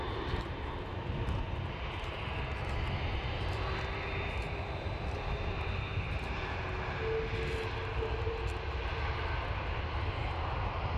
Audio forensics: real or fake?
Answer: real